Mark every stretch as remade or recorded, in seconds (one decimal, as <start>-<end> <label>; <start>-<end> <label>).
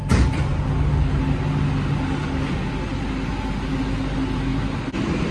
0.0-5.3 recorded